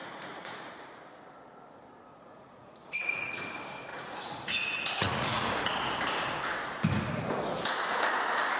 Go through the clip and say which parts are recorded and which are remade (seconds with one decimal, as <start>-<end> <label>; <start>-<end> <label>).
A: 0.0-1.0 remade; 1.0-2.1 recorded; 2.1-3.3 remade; 3.3-3.9 recorded; 3.9-5.5 remade; 5.5-8.6 recorded